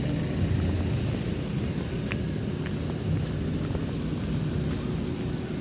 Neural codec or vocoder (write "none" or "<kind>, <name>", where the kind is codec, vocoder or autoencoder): none